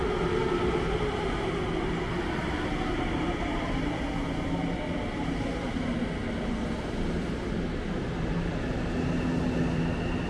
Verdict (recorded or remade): recorded